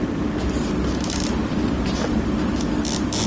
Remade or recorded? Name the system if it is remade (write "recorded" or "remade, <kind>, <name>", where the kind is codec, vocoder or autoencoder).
recorded